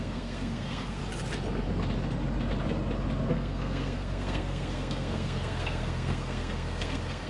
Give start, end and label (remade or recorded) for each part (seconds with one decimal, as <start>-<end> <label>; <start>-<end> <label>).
0.0-1.0 remade; 1.0-3.3 recorded; 3.3-7.3 remade